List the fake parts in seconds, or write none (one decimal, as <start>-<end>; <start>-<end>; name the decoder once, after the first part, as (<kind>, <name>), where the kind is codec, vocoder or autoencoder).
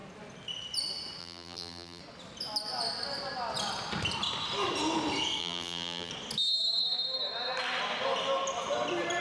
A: 1.2-2.0 (vocoder, BigVGAN v2); 5.4-6.1